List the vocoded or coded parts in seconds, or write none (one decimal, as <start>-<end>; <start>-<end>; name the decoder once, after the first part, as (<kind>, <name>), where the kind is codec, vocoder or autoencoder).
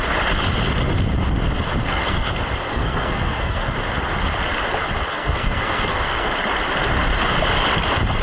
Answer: 1.8-2.3 (codec, SNAC); 2.7-3.7; 5.1-6.3